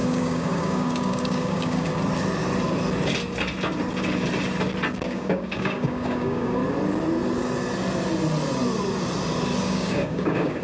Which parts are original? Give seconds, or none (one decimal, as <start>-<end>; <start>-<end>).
1.9-4.9; 6.6-9.6